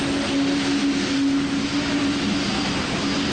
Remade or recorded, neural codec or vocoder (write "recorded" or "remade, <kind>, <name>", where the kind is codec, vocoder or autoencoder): recorded